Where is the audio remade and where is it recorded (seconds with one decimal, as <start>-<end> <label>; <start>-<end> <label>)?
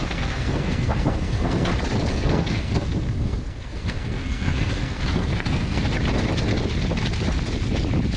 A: 0.0-1.7 remade; 1.7-2.1 recorded; 2.1-5.8 remade; 5.8-8.2 recorded